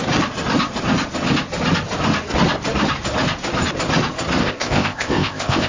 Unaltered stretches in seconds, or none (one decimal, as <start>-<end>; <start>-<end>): 0.0-4.4